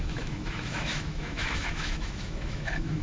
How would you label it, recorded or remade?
remade